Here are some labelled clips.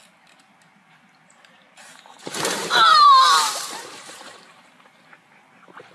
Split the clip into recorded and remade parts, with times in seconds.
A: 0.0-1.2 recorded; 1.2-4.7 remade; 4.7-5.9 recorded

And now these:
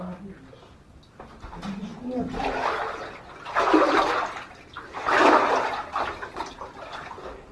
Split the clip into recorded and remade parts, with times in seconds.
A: 0.0-7.5 recorded